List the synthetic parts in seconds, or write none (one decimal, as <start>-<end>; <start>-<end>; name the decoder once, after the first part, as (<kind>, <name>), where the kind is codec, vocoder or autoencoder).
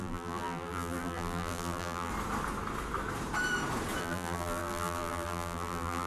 0.0-2.1 (vocoder, BigVGAN v2); 4.0-6.1